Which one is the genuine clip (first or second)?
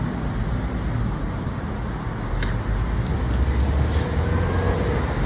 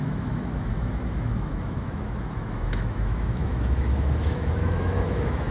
first